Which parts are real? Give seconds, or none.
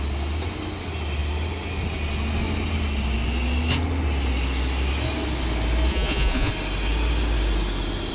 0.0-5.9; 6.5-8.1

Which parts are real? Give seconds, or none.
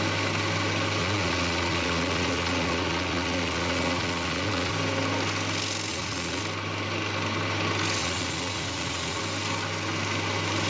0.0-1.0; 4.7-5.9; 6.4-8.0; 9.2-10.7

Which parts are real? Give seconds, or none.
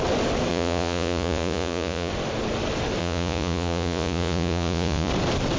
0.0-0.5; 2.1-3.0; 5.1-5.6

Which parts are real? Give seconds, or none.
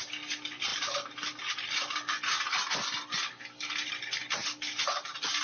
0.0-5.4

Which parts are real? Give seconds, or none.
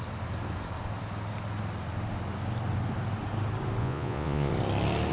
0.0-3.8; 4.5-5.1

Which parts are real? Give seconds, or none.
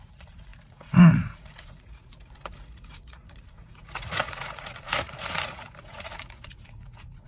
none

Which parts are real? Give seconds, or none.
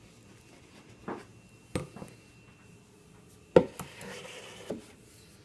0.0-5.4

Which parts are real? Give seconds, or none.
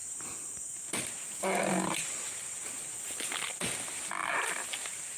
0.0-5.2